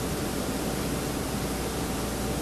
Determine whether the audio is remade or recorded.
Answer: recorded